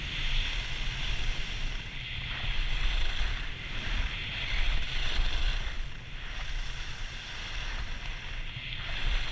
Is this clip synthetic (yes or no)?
no